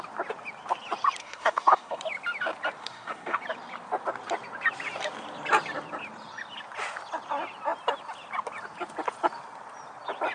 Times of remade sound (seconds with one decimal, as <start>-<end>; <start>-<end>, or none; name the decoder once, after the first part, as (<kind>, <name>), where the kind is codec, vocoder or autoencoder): 1.2-2.0 (codec, SNAC); 2.8-3.4